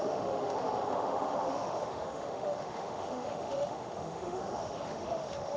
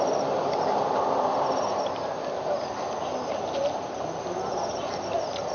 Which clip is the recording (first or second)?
second